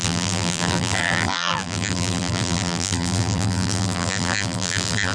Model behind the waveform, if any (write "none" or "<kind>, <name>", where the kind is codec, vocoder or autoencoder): vocoder, BigVGAN v2